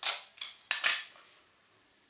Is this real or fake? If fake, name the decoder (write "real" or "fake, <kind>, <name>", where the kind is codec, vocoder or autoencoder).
real